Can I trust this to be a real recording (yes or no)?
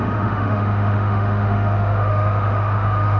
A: no